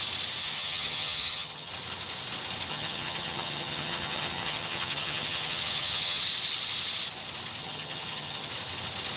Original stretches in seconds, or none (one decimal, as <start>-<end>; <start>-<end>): 0.0-0.4; 1.7-2.7; 6.2-7.6; 8.5-9.2

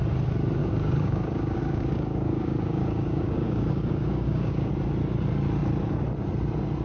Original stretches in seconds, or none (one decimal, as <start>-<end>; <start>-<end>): 0.0-0.6; 4.7-6.8

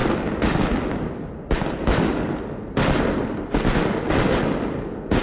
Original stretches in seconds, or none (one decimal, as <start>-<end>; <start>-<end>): 0.0-5.2

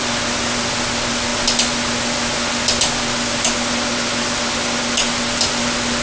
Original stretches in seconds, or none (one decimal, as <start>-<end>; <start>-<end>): 0.0-6.0

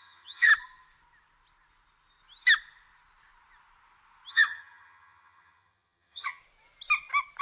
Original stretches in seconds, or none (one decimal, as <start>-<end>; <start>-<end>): 0.5-4.3; 6.4-7.4

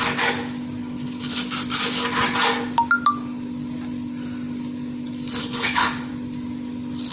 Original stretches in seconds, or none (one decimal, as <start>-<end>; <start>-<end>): 0.0-0.8; 1.4-5.4; 6.1-7.1

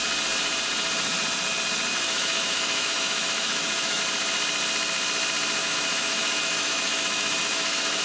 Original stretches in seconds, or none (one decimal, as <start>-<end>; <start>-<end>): 0.0-1.9; 4.0-5.6

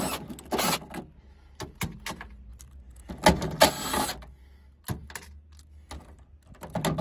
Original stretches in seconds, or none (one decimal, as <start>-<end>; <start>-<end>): 0.0-7.0